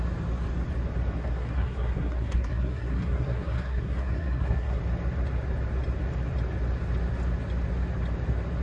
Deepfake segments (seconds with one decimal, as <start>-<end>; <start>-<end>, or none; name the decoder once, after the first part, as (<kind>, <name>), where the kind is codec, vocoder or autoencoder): 1.2-4.8 (codec, SNAC)